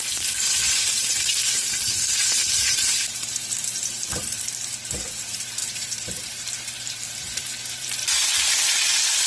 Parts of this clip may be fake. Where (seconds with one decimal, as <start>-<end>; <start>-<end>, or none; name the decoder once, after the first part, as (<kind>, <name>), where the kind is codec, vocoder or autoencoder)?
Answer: 0.0-8.0 (vocoder, BigVGAN v2); 8.7-9.3